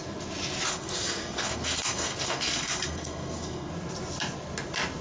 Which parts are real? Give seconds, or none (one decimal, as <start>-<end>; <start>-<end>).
0.0-0.7; 3.7-5.0